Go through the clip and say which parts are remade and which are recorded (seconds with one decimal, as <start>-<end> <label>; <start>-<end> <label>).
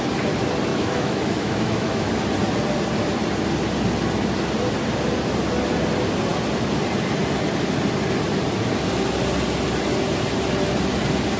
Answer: 0.0-0.7 recorded; 0.7-2.1 remade; 2.1-11.4 recorded